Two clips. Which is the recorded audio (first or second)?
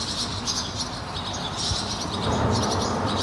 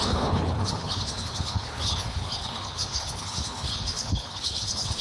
first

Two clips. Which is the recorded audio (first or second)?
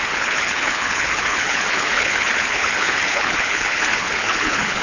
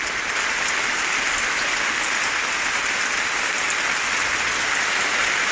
second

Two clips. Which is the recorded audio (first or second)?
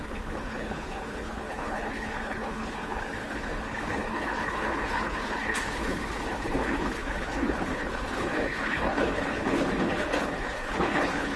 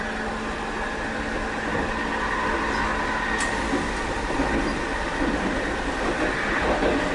second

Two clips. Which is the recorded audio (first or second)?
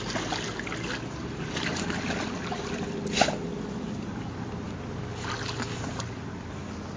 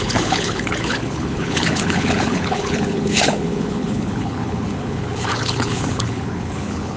first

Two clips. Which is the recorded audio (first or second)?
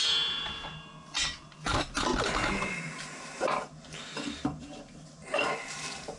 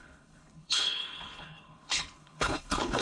first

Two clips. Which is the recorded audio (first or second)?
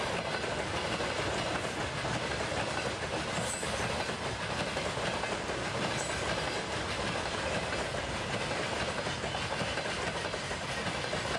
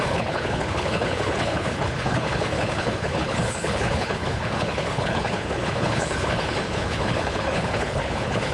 first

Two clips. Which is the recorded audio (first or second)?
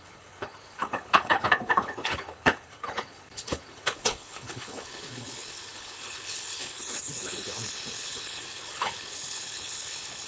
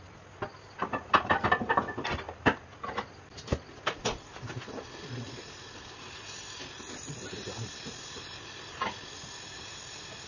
second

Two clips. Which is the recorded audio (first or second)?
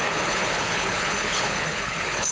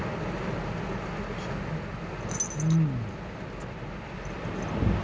second